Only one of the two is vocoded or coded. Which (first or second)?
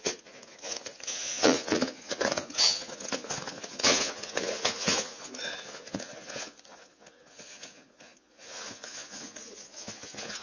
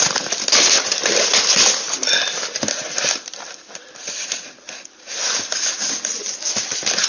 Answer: first